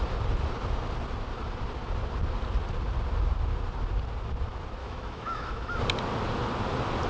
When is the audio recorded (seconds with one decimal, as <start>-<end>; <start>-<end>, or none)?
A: 0.0-4.8; 5.8-7.1